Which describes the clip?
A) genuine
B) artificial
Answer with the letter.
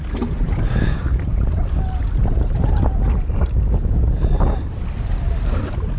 A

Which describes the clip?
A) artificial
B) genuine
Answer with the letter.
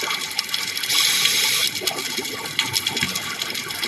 B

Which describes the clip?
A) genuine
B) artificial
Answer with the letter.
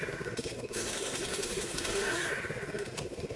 B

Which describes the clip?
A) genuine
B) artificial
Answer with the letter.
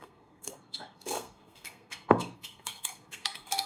B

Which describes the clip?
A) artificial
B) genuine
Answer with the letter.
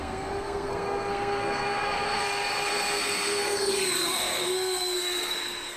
A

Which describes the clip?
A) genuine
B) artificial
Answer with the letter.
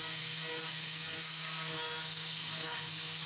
B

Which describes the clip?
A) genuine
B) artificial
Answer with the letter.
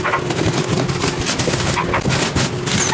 A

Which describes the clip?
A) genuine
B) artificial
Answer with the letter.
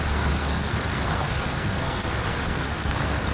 B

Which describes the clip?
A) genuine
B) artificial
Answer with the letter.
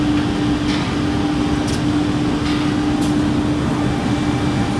A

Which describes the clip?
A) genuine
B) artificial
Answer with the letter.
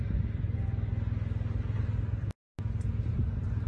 A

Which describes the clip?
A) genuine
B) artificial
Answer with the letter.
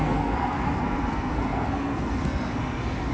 B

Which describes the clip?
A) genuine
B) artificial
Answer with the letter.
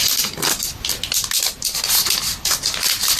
A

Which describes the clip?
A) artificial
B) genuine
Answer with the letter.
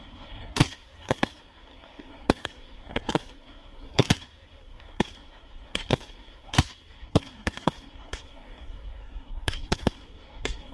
A